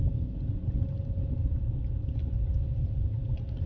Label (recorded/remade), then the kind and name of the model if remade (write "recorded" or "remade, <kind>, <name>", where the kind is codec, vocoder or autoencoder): recorded